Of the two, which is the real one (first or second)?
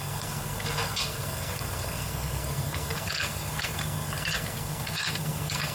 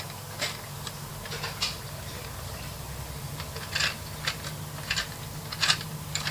second